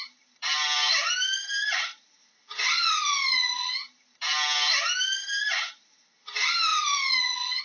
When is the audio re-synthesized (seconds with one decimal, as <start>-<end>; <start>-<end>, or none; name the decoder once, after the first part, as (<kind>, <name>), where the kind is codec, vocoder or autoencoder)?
2.2-3.7 (vocoder, Vocos); 6.7-7.6